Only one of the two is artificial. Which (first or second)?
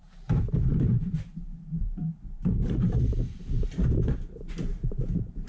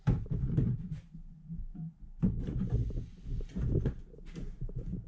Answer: first